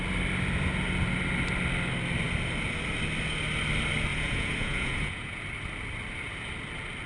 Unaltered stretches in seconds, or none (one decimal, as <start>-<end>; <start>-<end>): 0.0-4.1; 5.4-7.1